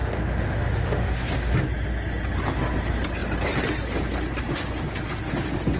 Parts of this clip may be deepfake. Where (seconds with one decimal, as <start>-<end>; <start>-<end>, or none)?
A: 0.0-1.5